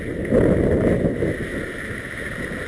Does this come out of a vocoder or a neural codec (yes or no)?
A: no